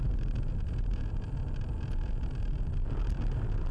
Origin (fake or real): real